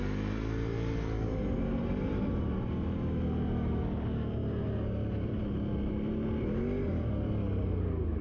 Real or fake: real